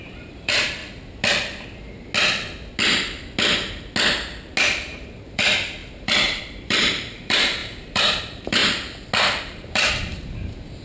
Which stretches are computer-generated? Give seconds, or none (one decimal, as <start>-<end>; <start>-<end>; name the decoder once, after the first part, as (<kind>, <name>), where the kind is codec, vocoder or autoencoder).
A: 0.0-0.8 (vocoder, BigVGAN v2); 4.6-8.6; 9.4-10.8